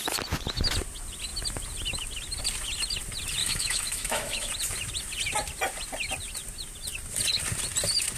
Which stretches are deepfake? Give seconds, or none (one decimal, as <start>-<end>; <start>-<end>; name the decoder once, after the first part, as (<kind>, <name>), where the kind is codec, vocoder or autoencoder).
3.4-4.5 (autoencoder, DAC-VAE)